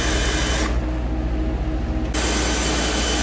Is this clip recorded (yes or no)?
yes